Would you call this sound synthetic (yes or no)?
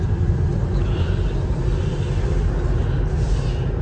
no